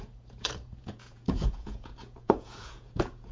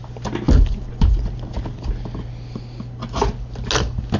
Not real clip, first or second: first